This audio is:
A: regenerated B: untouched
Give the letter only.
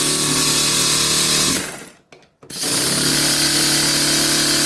B